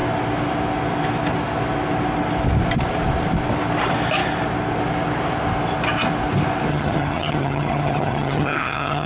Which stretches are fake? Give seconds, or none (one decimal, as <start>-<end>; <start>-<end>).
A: 6.7-9.1